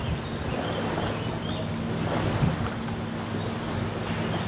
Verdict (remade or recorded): recorded